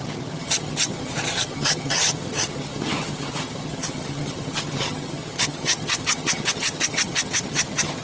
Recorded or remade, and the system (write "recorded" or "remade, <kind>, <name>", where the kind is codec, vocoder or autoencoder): remade, vocoder, HiFi-GAN